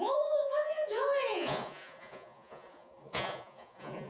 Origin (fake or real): fake